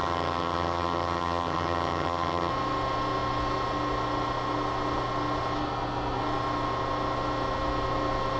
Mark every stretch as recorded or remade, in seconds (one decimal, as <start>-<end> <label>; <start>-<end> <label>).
0.0-2.5 remade; 2.5-8.4 recorded